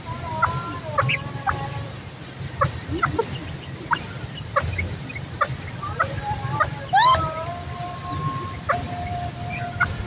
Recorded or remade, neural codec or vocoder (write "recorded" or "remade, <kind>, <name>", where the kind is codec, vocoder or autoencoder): remade, vocoder, BigVGAN v2